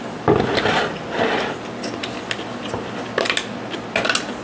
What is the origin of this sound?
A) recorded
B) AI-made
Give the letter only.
A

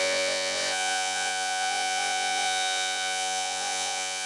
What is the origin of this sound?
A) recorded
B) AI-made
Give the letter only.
B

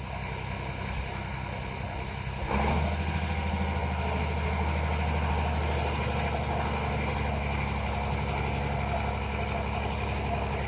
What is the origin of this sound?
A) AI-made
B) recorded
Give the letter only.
B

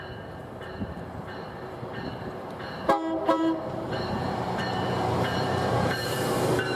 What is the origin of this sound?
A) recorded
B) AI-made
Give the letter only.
B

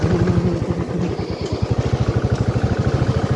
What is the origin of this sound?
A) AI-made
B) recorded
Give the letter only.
B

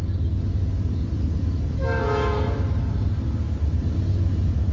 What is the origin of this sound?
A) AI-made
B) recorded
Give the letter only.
B